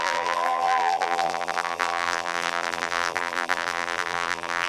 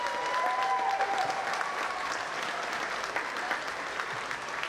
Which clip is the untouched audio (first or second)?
second